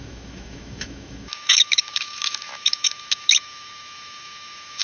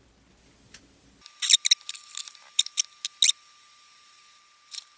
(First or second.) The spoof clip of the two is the first